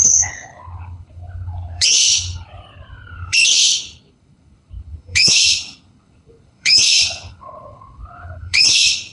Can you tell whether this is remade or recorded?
remade